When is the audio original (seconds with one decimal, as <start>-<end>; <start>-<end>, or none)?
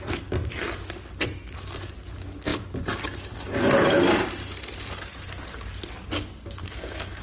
0.0-6.6